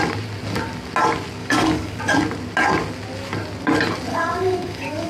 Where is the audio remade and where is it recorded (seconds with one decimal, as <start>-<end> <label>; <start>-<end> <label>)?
0.0-1.4 recorded; 1.4-2.0 remade; 2.0-4.1 recorded; 4.1-5.1 remade